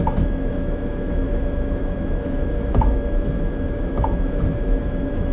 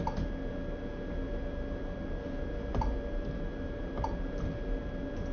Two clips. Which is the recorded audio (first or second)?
second